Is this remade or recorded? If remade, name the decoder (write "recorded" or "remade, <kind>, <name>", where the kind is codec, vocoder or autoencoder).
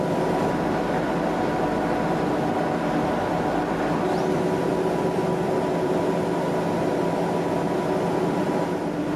recorded